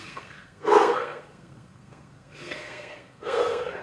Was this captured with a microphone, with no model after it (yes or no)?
no